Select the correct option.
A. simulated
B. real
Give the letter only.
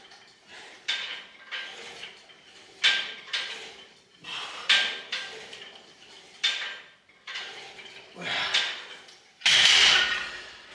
A